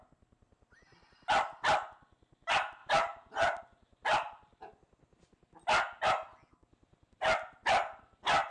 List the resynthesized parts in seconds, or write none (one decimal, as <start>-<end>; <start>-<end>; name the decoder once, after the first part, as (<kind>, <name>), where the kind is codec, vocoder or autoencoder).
2.8-3.6 (vocoder, BigVGAN v2)